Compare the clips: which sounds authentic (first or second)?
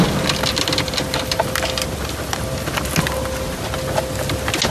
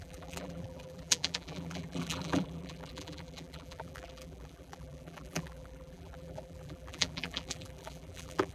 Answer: first